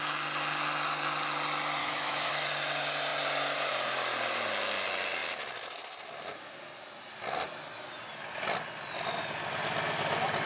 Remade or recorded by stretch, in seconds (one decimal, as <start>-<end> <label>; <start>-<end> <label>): 0.0-1.8 recorded; 1.8-2.3 remade; 2.3-10.5 recorded